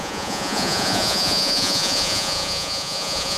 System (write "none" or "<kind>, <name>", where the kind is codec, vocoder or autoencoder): vocoder, Vocos